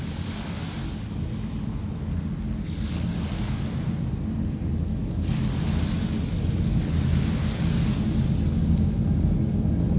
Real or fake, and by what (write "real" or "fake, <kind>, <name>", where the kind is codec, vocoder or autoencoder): real